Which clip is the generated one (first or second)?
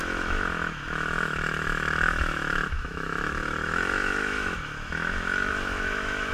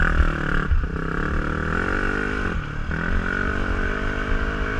first